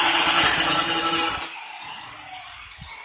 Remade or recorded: recorded